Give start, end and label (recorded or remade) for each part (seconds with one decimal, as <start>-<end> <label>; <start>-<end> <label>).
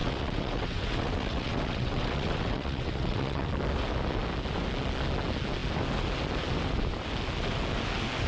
0.0-3.5 remade; 3.5-8.3 recorded